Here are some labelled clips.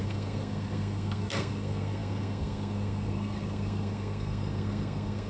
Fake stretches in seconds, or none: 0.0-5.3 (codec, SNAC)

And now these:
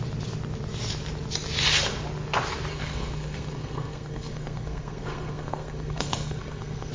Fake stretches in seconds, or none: 2.7-6.9 (codec, SNAC)

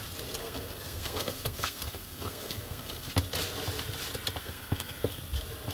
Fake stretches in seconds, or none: 0.4-3.1 (codec, SNAC); 4.4-5.2

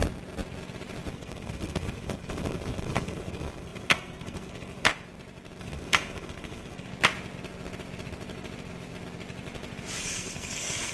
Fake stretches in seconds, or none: 1.1-4.9 (codec, SNAC); 5.6-6.9; 10.0-10.9

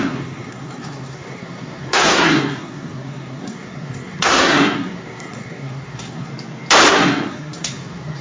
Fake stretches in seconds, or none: 0.0-6.3 (codec, SNAC); 6.9-8.2

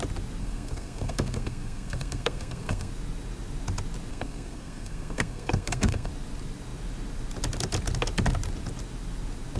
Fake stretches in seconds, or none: 0.4-2.9 (codec, SNAC); 4.1-6.1